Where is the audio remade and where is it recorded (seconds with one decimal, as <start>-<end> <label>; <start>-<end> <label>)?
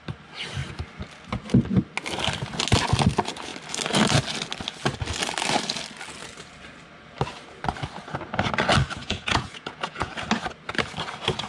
0.0-9.0 recorded; 9.0-10.1 remade; 10.1-11.5 recorded